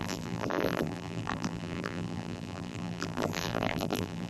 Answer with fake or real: fake